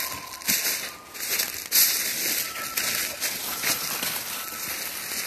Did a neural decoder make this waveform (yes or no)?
no